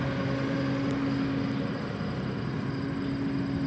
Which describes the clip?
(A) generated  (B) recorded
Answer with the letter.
B